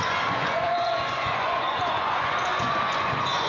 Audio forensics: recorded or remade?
remade